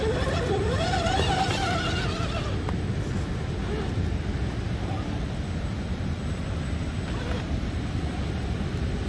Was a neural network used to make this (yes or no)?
no